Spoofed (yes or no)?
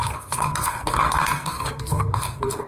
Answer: yes